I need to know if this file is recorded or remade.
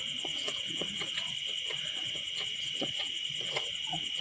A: remade